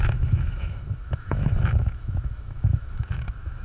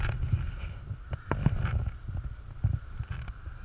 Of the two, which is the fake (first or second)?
first